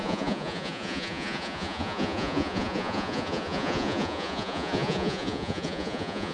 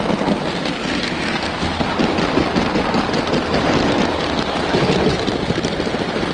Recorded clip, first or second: second